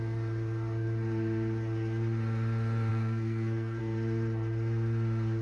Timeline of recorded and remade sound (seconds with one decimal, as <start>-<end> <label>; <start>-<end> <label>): 0.0-2.9 recorded; 2.9-3.8 remade; 3.8-5.4 recorded